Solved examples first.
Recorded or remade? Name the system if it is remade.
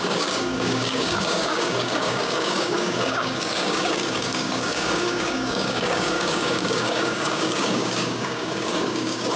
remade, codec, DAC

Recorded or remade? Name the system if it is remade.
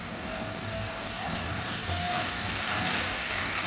remade, codec, DAC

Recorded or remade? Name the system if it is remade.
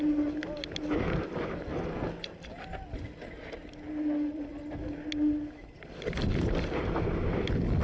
recorded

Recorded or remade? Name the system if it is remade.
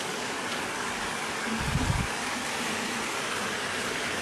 remade, codec, DAC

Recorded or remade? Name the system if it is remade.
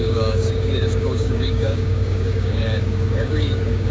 remade, codec, DAC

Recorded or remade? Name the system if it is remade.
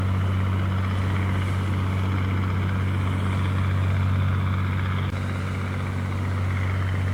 recorded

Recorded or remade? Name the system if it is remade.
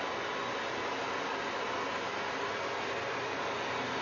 recorded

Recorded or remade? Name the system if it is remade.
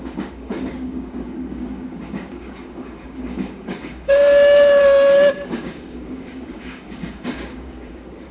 remade, codec, DAC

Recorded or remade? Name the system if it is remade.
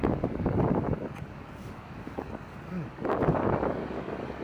remade, codec, DAC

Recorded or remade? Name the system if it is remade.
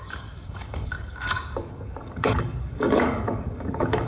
remade, codec, DAC